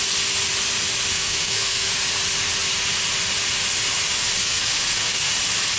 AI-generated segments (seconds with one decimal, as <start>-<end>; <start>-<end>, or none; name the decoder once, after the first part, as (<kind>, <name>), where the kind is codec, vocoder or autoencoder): 1.1-1.9 (codec, SNAC); 4.4-5.3